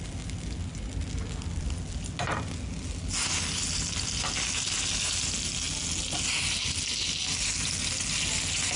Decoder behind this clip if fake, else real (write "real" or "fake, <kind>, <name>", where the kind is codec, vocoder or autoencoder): real